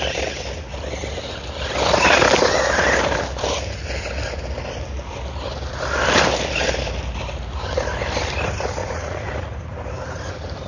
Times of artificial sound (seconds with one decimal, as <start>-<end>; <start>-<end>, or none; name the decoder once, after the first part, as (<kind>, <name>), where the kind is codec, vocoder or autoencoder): 8.8-9.3 (vocoder, Vocos)